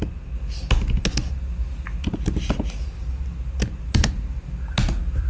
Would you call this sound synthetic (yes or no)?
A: no